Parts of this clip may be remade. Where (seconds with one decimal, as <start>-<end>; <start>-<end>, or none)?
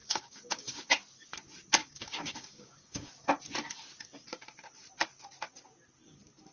0.0-0.9; 1.8-3.1